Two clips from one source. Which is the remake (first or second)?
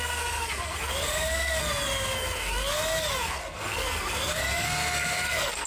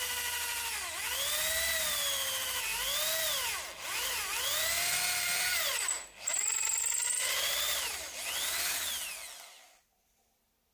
first